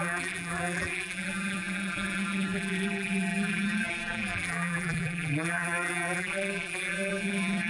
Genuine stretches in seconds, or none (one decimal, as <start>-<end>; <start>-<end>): none